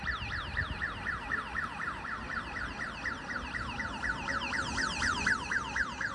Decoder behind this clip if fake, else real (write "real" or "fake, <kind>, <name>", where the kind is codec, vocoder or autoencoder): real